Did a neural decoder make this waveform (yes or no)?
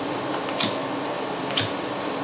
no